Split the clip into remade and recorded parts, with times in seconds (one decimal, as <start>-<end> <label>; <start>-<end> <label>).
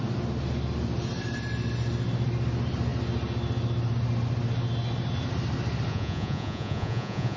0.0-5.9 recorded; 5.9-7.4 remade